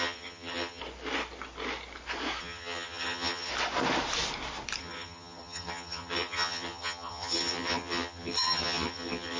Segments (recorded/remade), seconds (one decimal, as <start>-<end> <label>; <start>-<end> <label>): 0.0-0.8 remade; 0.8-2.4 recorded; 2.4-3.5 remade; 3.5-4.8 recorded; 4.8-9.4 remade